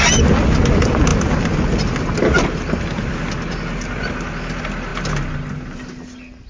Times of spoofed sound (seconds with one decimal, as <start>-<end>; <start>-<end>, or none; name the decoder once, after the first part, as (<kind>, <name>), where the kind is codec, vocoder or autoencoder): none